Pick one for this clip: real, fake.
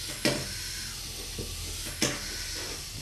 real